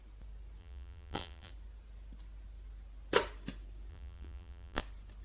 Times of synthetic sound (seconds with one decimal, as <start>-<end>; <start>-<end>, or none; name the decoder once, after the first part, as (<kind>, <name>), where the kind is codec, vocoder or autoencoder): 0.6-1.5 (vocoder, BigVGAN v2); 3.9-4.8